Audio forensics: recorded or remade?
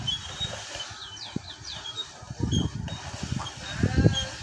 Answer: recorded